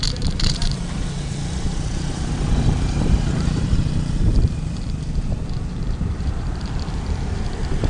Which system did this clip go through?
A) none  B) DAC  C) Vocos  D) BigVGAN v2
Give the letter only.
D